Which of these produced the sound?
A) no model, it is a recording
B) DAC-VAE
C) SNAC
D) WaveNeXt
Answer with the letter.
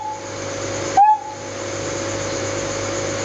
A